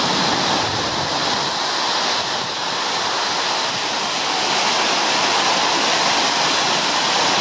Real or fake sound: real